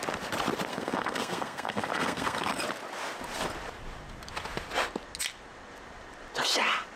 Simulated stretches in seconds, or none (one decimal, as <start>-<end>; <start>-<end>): 0.7-2.6

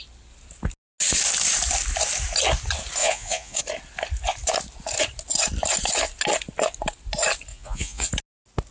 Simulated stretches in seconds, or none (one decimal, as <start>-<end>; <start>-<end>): 3.0-3.6; 7.5-8.1

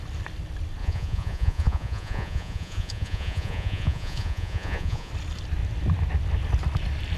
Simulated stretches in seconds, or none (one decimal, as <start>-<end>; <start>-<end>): 0.8-5.1